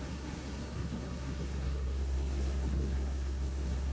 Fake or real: fake